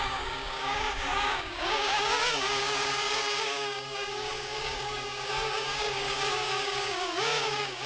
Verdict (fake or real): fake